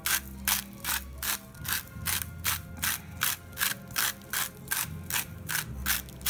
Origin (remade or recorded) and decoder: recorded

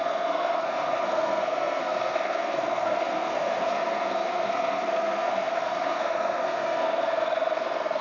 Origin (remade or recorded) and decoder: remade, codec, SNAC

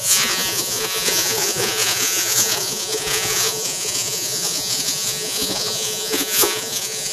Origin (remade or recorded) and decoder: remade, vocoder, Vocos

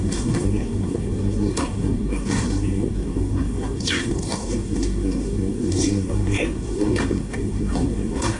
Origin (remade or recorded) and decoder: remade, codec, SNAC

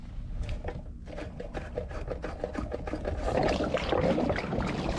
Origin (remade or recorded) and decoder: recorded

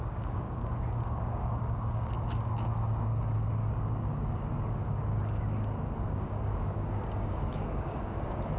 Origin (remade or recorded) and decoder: remade, codec, DAC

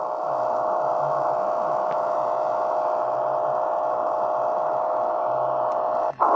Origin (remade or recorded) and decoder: recorded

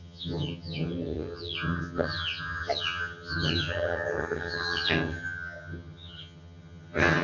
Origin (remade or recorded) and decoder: remade, vocoder, HiFi-GAN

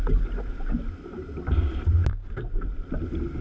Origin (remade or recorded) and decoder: recorded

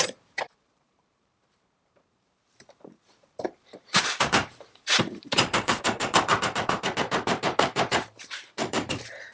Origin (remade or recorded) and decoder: remade, vocoder, BigVGAN v2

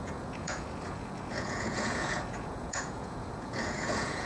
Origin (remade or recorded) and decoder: remade, vocoder, Vocos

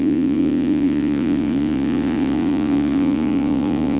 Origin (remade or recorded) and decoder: remade, vocoder, Vocos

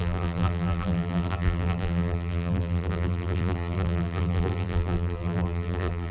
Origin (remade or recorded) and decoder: remade, vocoder, BigVGAN v2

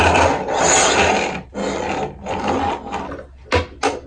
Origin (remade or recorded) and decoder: recorded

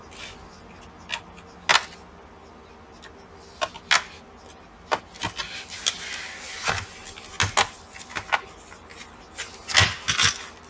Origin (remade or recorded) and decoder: recorded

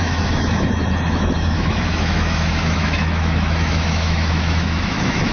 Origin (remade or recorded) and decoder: remade, autoencoder, DAC-VAE